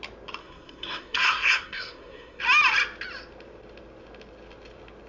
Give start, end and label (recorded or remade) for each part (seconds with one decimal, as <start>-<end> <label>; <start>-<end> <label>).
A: 0.0-0.4 recorded; 0.4-2.4 remade; 2.4-5.1 recorded